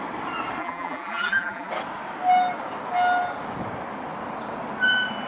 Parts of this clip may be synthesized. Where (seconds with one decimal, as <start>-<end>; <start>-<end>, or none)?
0.6-1.7